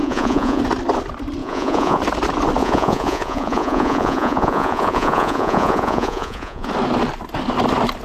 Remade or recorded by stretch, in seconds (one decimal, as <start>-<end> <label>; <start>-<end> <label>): 0.0-0.6 remade; 0.6-1.4 recorded; 1.4-2.0 remade; 2.0-2.6 recorded; 2.6-6.7 remade; 6.7-8.0 recorded